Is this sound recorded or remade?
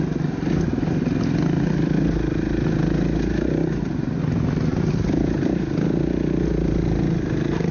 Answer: recorded